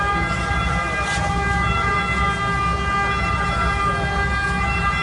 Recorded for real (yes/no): yes